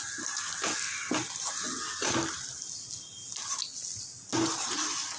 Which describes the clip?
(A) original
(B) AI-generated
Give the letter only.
A